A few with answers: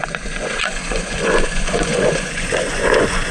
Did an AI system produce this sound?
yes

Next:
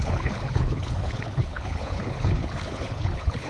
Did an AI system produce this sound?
yes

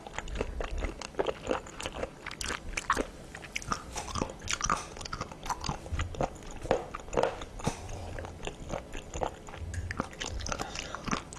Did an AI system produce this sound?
no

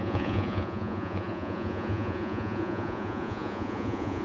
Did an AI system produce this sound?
yes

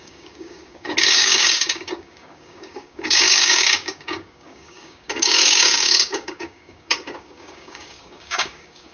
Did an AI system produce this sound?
yes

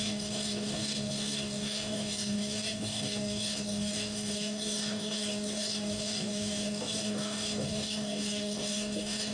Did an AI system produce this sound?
yes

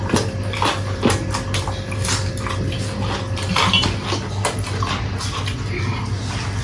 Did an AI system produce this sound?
no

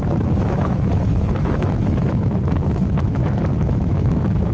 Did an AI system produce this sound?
yes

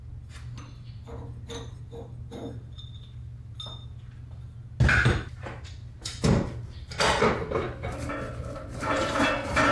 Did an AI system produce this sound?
no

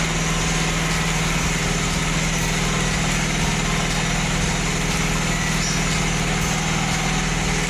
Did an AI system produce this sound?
no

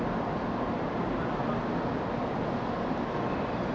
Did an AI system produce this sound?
yes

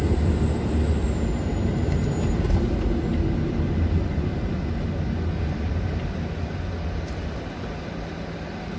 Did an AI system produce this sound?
no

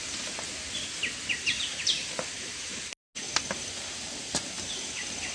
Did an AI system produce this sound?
no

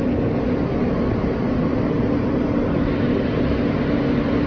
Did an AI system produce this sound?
no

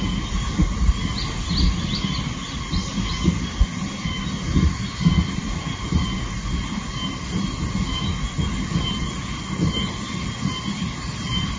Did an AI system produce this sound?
no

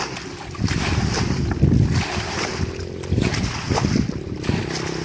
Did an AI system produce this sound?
no